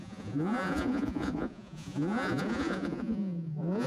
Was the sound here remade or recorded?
remade